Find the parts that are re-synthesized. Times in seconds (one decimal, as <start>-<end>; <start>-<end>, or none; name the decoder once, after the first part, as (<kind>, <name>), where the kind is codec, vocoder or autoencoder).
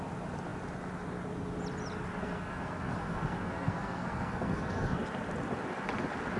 2.2-5.0 (codec, SNAC)